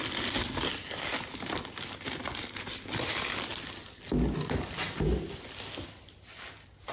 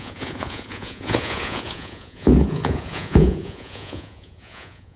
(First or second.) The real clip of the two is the first